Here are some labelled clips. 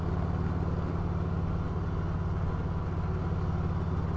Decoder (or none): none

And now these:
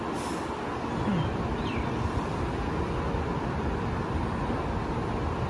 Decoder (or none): none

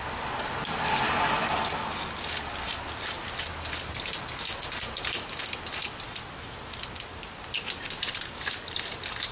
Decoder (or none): none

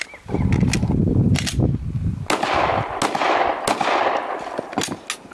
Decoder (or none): none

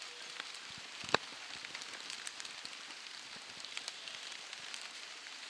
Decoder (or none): none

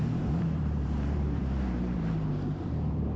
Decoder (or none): vocoder, BigVGAN v2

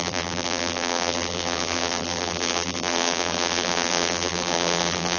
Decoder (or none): vocoder, BigVGAN v2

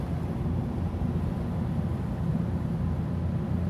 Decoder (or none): none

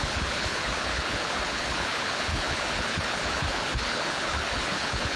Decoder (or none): codec, HILCodec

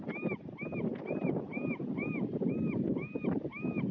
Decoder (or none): none